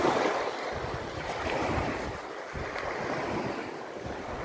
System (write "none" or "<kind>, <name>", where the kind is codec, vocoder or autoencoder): vocoder, BigVGAN v2